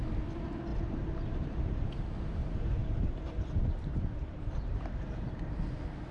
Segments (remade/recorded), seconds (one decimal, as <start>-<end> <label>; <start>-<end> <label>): 0.0-0.7 recorded; 0.7-1.9 remade; 1.9-2.4 recorded; 2.4-5.3 remade; 5.3-6.1 recorded